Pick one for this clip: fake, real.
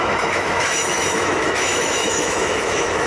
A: fake